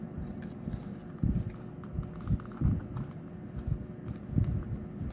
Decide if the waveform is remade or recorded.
recorded